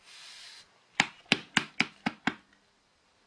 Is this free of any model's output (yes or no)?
yes